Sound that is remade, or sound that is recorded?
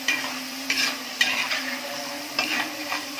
remade